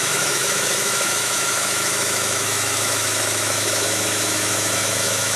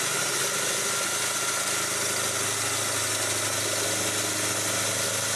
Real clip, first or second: second